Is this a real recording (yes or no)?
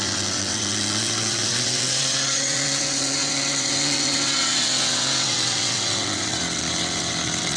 no